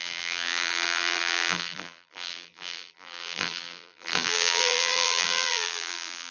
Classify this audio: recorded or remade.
remade